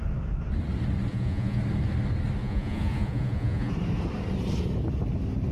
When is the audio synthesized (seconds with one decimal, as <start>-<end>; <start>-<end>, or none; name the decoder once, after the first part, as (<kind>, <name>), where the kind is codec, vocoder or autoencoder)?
1.1-1.6 (vocoder, Vocos); 2.4-3.7